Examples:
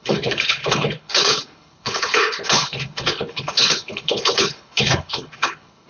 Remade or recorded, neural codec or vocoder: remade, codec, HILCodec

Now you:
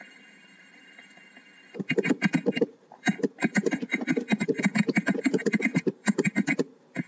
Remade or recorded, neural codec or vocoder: remade, vocoder, BigVGAN v2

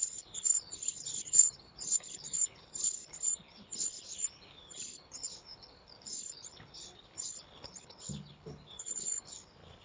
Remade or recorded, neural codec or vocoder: remade, codec, HILCodec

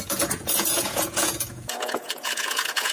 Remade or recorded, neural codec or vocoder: remade, vocoder, Vocos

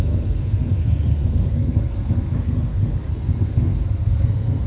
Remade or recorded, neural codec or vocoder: remade, codec, SNAC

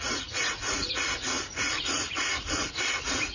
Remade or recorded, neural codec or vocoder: remade, vocoder, Vocos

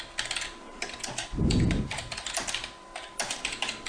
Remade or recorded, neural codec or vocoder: recorded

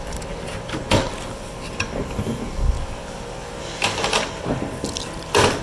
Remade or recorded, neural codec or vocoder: recorded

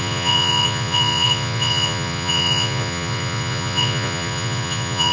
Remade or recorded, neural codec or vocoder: remade, vocoder, Vocos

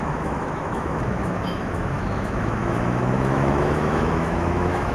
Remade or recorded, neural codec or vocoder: remade, autoencoder, DAC-VAE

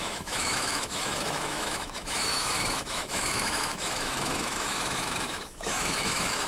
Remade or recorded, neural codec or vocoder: remade, autoencoder, DAC-VAE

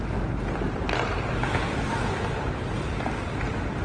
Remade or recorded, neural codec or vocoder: recorded